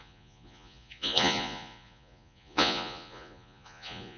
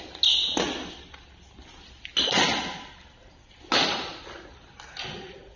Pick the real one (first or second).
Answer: second